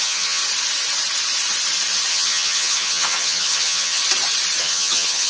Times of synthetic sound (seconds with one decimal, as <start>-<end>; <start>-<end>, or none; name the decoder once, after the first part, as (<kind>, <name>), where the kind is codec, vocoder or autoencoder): 0.0-0.4 (vocoder, HiFi-GAN); 2.1-4.0; 4.6-5.3